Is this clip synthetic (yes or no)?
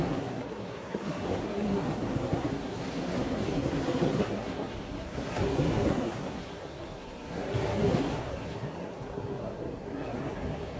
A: yes